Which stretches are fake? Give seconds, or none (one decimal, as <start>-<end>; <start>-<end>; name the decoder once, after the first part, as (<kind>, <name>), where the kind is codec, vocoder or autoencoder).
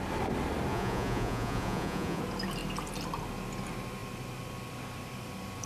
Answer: 0.7-2.2 (vocoder, Vocos)